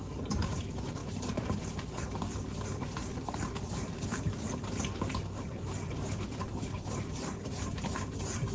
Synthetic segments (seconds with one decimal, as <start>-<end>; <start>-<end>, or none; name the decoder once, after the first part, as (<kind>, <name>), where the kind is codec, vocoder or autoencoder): 0.0-8.5 (vocoder, BigVGAN v2)